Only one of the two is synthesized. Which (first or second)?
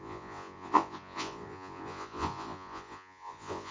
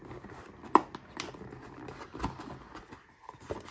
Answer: first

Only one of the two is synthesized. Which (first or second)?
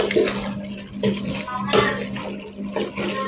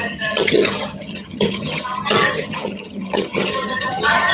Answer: second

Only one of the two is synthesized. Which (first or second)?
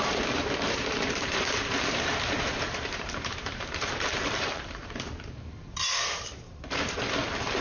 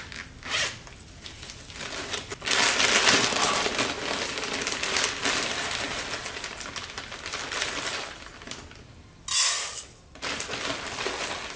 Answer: first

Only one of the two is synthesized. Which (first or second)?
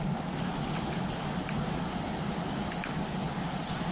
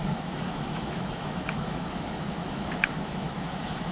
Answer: second